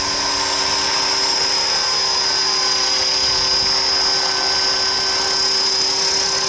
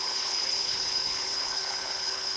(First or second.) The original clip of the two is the first